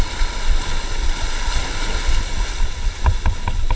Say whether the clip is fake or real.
real